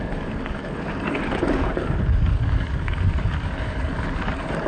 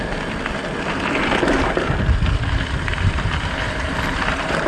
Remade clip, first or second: first